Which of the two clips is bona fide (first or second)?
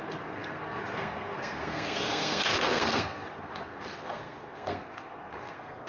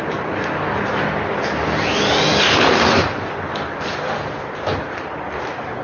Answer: second